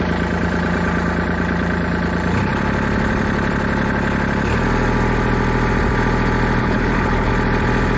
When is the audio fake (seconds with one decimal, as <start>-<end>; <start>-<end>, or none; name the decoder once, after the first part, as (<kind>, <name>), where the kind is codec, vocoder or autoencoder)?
6.6-7.3 (codec, HILCodec)